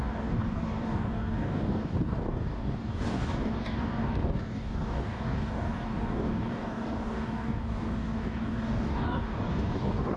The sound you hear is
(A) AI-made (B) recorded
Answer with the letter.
A